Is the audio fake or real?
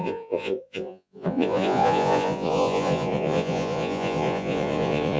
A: fake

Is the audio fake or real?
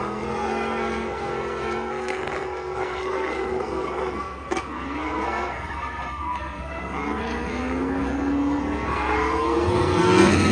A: fake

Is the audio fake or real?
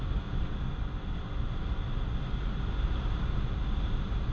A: real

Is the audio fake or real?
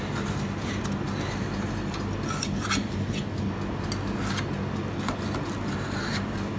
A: real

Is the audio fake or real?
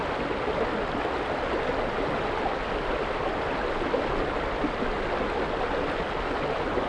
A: real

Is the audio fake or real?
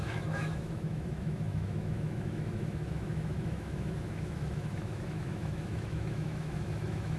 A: fake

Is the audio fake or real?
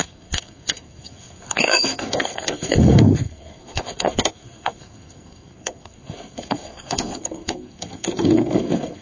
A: fake